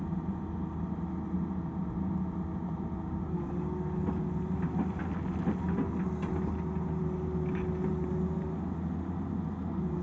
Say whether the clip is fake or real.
real